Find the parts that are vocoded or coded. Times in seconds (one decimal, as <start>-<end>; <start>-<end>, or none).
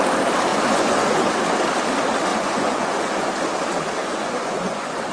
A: 0.5-1.2; 2.3-3.3; 4.0-5.1